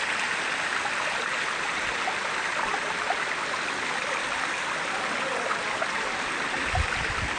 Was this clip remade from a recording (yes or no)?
no